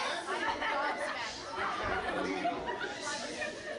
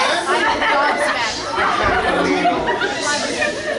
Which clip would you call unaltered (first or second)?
second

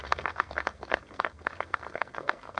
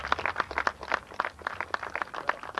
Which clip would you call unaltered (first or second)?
second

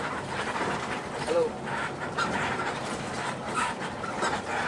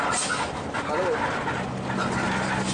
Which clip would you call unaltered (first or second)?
second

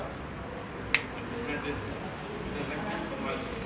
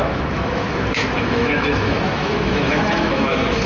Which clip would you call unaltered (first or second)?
first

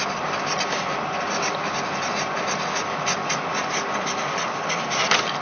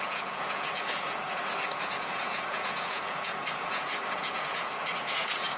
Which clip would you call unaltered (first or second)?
first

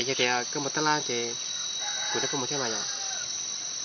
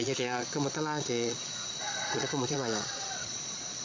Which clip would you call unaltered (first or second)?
first